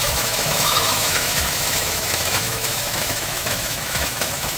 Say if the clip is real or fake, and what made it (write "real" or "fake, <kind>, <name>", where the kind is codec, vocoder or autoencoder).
fake, autoencoder, DAC-VAE